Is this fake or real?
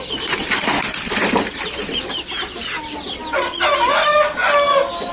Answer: real